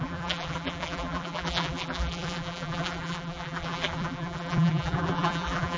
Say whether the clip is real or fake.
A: fake